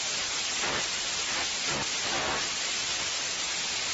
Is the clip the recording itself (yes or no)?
yes